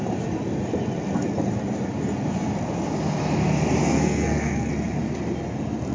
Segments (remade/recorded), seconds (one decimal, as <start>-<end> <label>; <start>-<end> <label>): 0.0-3.8 recorded; 3.8-4.7 remade; 4.7-5.9 recorded